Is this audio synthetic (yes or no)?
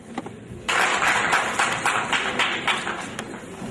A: no